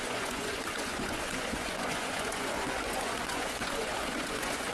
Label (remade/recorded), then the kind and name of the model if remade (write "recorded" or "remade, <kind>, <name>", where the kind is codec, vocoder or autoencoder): remade, vocoder, Vocos